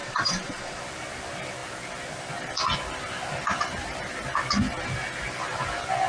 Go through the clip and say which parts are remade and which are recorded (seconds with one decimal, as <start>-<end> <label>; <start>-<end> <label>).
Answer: 0.0-0.8 remade; 0.8-6.1 recorded